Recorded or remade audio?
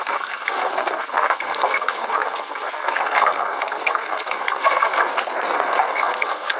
remade